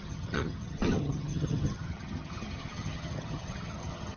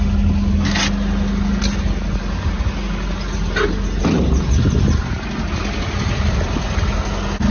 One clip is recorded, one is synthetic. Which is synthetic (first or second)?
first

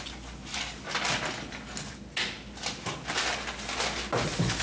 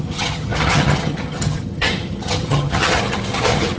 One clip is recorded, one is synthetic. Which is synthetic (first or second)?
second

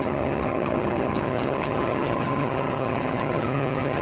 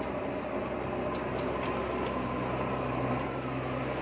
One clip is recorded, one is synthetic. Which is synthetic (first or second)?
first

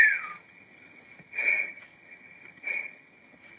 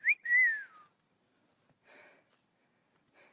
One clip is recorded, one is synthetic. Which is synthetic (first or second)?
first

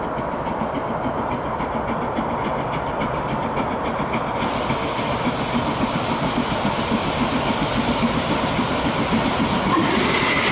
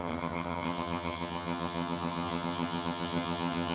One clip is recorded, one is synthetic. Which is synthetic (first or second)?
second